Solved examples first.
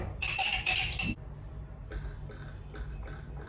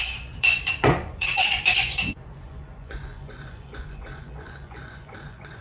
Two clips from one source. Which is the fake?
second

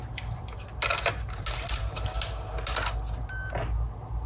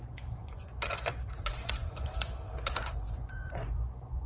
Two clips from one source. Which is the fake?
second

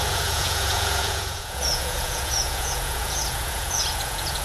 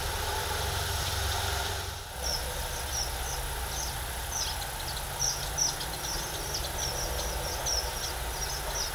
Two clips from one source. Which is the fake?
first